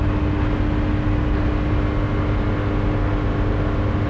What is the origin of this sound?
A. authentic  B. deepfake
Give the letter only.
A